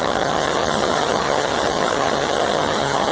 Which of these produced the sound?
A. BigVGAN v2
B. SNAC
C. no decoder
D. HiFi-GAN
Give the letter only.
D